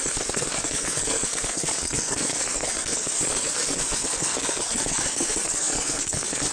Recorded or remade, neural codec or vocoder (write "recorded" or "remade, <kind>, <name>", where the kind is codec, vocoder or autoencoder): remade, codec, SNAC